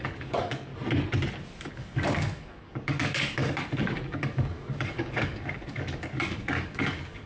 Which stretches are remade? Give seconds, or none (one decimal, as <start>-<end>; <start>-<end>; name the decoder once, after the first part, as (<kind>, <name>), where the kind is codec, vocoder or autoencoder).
0.0-0.7 (codec, DAC); 1.7-7.3